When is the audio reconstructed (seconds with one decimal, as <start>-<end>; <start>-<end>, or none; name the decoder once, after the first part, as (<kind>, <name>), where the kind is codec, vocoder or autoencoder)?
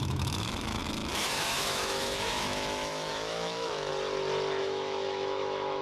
0.0-3.9 (autoencoder, DAC-VAE); 4.6-5.8